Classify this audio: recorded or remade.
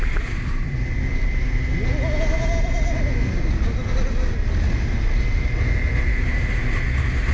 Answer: recorded